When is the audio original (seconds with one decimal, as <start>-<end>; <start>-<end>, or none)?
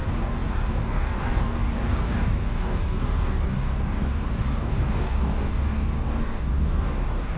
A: none